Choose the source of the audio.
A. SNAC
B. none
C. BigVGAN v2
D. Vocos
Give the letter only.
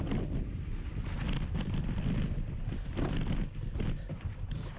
C